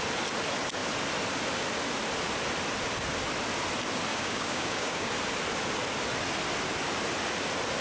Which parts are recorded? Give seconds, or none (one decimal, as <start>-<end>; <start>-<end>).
0.0-4.1; 5.1-7.8